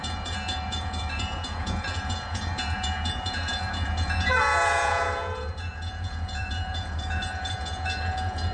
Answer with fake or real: fake